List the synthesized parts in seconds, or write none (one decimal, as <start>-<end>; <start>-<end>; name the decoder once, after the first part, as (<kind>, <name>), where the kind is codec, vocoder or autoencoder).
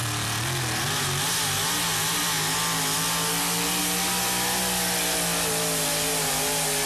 1.0-1.9 (vocoder, BigVGAN v2); 3.8-6.9